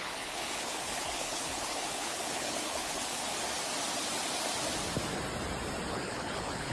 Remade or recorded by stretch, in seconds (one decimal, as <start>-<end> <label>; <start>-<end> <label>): 0.0-3.2 remade; 3.2-5.9 recorded; 5.9-6.7 remade